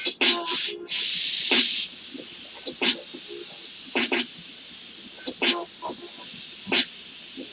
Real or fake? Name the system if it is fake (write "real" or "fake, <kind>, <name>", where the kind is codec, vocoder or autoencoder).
real